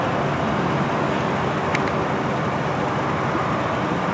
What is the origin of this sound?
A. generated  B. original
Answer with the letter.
B